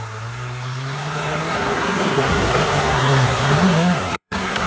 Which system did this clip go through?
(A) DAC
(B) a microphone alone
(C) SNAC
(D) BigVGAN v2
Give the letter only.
C